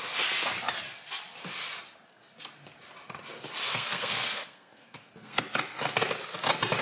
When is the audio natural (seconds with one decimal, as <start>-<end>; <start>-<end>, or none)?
0.0-3.7; 5.4-6.8